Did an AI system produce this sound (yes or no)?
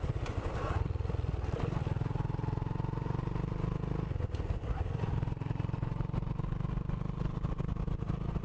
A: no